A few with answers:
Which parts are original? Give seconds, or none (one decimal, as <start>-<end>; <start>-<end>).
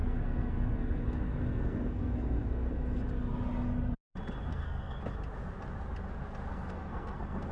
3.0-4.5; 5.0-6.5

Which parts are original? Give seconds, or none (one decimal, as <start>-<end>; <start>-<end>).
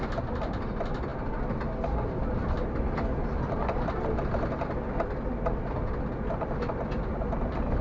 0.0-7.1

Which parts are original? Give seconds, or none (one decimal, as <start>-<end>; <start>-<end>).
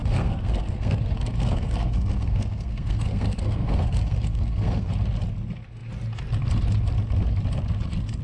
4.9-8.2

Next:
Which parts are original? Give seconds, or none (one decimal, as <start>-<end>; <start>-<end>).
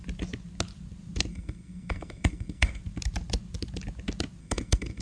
0.0-1.3; 2.8-4.4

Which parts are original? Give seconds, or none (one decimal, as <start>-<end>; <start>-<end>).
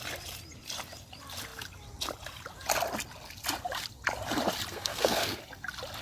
0.0-4.7; 5.4-6.0